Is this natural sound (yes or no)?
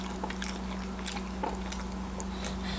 yes